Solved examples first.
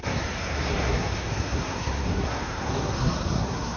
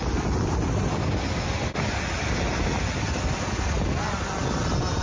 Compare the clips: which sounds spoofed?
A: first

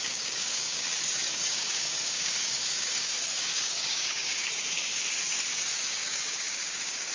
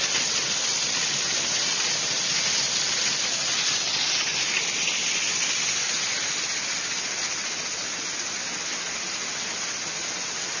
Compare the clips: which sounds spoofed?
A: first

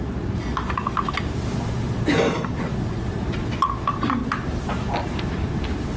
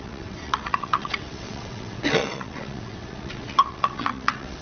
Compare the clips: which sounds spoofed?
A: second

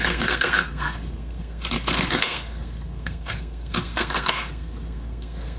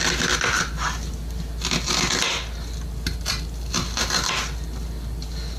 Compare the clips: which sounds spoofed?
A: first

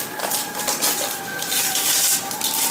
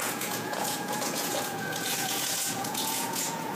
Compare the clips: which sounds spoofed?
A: second